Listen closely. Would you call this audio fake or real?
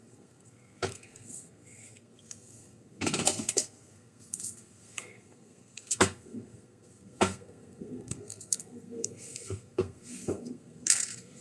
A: fake